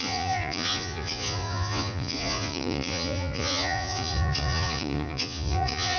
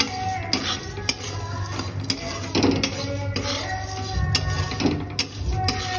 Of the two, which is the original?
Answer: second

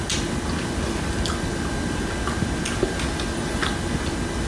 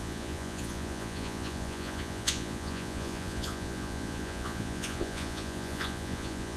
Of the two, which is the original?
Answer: first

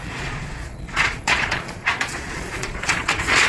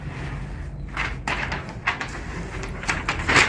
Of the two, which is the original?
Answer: second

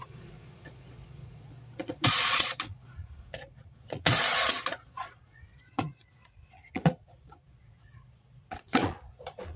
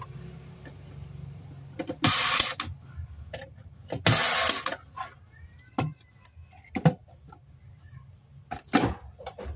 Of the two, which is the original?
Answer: second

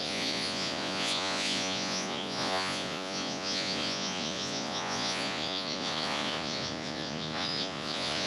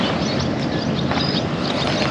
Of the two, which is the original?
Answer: second